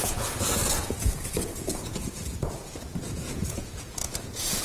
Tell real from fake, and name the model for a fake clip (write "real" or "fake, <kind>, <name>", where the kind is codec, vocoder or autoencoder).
fake, vocoder, Vocos